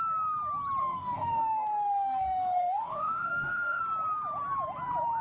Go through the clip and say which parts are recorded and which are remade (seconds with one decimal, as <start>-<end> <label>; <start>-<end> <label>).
0.0-0.8 recorded; 0.8-3.8 remade; 3.8-5.2 recorded

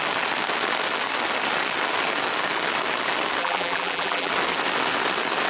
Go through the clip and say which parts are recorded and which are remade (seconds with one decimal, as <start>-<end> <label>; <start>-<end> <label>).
0.0-3.4 recorded; 3.4-4.3 remade; 4.3-5.5 recorded

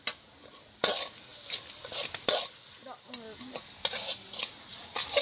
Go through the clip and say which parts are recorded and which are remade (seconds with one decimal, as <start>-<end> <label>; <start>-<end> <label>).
0.0-5.2 recorded

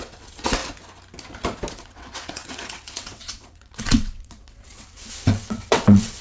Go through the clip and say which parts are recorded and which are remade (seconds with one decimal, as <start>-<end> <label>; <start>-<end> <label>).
0.0-0.6 remade; 0.6-1.7 recorded; 1.7-6.2 remade

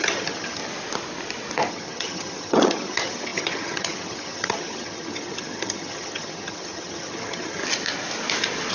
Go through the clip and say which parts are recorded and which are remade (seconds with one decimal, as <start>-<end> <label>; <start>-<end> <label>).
0.0-0.6 remade; 0.6-1.7 recorded; 1.7-7.6 remade; 7.6-8.7 recorded

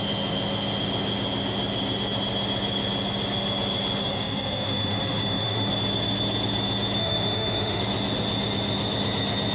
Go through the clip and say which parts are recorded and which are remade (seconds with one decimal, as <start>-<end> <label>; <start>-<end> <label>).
0.0-4.0 recorded; 4.0-5.7 remade; 5.7-7.0 recorded; 7.0-7.8 remade; 7.8-9.5 recorded

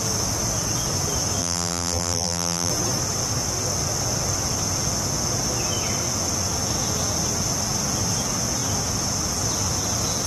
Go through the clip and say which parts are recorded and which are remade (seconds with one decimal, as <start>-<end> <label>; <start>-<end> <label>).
0.0-1.4 recorded; 1.4-2.7 remade; 2.7-10.3 recorded